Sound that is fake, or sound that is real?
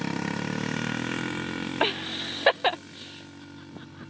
real